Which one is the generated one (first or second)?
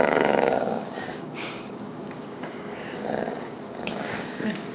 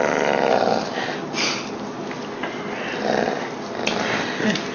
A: first